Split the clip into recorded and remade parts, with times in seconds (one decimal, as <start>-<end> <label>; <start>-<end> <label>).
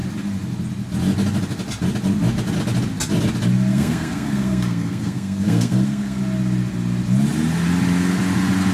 0.0-3.7 recorded; 3.7-6.2 remade; 6.2-8.7 recorded